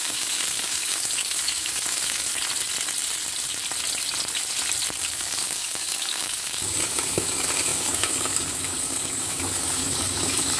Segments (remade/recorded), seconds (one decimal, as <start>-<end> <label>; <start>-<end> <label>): 0.0-2.3 remade; 2.3-5.0 recorded; 5.0-10.6 remade